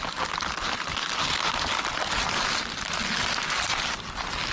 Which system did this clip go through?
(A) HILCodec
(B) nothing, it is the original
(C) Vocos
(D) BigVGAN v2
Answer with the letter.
B